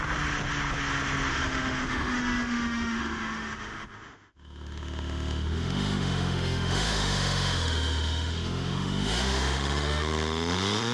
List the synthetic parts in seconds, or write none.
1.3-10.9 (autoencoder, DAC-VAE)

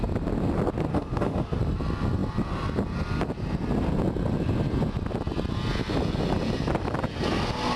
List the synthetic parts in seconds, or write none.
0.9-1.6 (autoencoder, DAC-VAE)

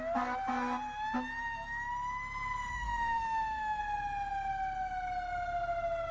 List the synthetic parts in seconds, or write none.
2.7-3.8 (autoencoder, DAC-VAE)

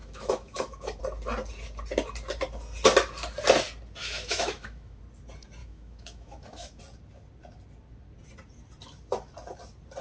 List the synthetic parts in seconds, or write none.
0.0-1.0 (autoencoder, DAC-VAE); 4.0-5.0; 5.6-6.8

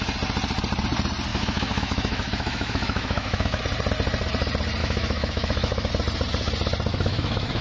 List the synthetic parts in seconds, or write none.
1.3-3.6 (autoencoder, DAC-VAE); 4.8-5.9; 6.9-7.6